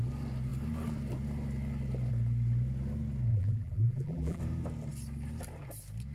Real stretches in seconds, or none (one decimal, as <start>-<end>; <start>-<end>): 0.0-3.3; 4.4-6.1